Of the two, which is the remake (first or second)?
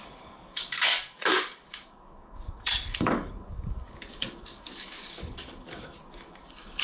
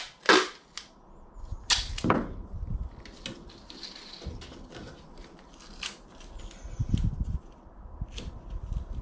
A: first